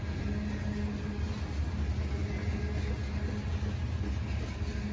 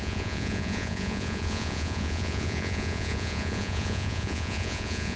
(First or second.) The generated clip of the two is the second